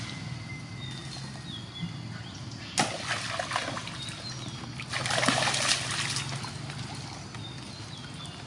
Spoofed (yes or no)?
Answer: no